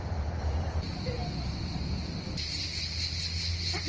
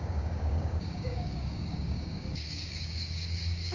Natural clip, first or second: first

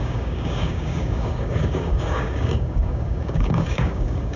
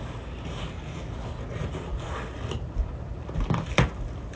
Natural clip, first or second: second